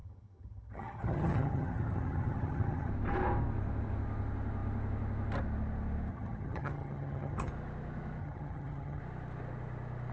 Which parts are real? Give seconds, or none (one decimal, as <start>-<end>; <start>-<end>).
2.9-6.1; 7.5-8.2; 9.0-10.1